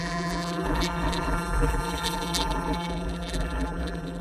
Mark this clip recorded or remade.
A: remade